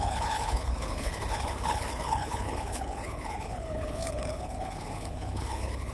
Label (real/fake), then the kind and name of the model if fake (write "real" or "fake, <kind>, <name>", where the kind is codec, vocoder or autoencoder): fake, codec, HILCodec